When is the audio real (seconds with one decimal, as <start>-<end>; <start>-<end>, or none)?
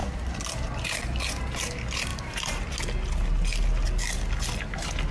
0.0-2.1; 2.7-5.1